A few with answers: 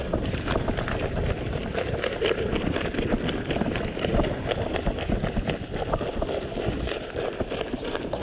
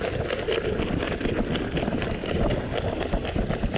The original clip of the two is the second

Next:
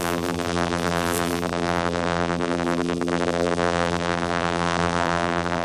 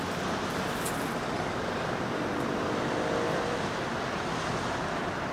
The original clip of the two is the second